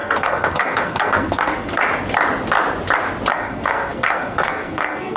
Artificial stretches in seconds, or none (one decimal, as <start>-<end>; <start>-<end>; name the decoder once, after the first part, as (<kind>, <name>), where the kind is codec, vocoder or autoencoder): 0.0-1.8 (codec, SNAC); 3.3-5.2